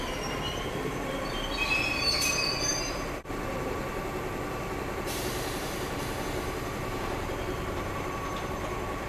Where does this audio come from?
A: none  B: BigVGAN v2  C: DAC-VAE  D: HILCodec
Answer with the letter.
B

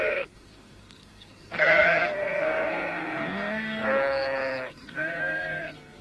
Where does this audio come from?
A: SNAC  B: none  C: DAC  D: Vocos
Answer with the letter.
A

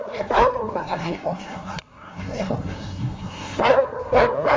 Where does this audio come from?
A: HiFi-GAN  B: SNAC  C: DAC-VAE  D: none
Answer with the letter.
B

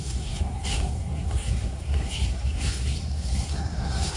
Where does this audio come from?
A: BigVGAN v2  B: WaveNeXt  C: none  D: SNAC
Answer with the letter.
D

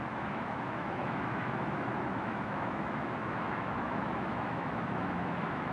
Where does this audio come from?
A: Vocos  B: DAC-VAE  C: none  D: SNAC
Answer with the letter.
B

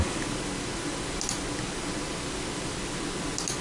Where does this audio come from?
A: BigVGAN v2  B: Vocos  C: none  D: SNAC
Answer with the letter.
C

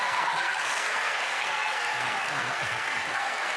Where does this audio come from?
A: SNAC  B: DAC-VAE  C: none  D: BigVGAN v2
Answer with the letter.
A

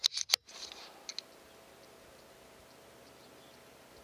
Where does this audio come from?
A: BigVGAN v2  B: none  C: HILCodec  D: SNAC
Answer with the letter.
B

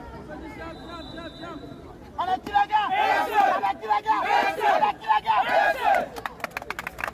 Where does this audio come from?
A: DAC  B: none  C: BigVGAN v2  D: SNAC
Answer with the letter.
B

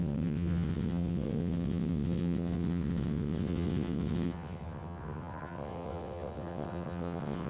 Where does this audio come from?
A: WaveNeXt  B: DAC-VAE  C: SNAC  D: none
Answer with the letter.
A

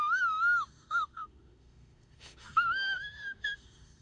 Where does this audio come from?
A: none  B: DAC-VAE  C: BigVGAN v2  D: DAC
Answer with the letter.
B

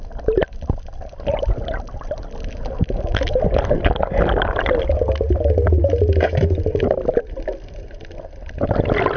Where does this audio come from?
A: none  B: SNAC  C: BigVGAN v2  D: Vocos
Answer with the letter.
A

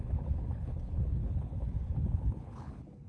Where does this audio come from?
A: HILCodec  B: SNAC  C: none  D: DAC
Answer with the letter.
A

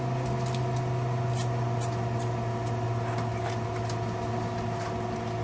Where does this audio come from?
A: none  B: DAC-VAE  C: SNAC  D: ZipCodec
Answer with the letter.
A